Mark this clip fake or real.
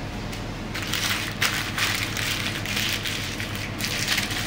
real